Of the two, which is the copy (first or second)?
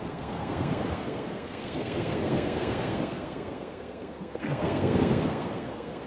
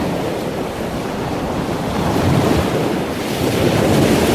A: first